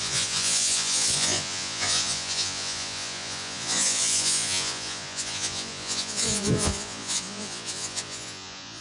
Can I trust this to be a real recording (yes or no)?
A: no